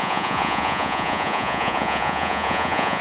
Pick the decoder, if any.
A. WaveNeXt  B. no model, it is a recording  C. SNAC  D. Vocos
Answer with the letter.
D